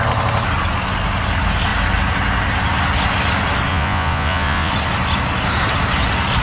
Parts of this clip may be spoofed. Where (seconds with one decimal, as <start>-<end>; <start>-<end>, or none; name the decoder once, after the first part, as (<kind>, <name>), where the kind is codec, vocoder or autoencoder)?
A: 3.7-4.7 (vocoder, Vocos)